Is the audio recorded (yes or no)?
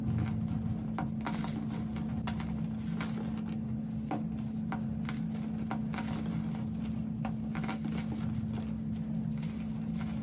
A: yes